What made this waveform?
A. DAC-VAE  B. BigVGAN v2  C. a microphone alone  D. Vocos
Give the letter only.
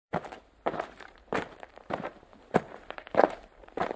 B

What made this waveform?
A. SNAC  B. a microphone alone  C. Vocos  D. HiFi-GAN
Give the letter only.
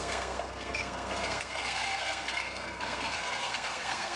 A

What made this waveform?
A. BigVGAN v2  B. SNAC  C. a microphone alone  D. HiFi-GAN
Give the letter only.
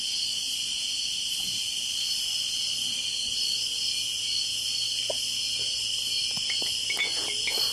C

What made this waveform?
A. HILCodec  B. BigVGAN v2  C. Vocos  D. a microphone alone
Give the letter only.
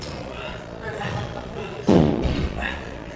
C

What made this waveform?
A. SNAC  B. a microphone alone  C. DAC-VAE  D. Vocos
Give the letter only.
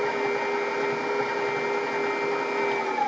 B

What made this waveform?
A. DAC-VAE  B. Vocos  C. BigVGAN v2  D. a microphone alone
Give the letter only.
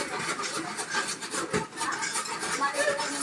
D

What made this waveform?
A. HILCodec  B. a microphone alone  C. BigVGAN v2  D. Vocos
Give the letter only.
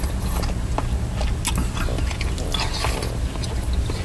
B